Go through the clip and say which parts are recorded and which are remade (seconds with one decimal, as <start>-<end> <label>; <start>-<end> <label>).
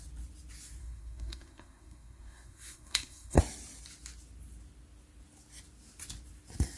0.0-0.8 recorded; 0.8-3.4 remade; 3.4-6.8 recorded